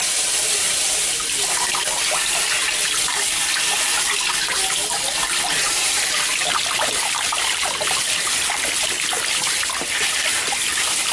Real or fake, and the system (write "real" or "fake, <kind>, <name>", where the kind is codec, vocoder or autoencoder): real